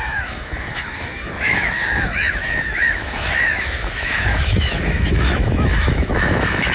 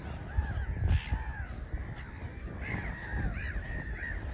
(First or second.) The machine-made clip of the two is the first